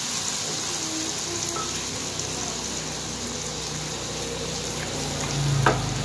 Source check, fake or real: real